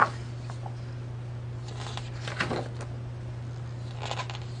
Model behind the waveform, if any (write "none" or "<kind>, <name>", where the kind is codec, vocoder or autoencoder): none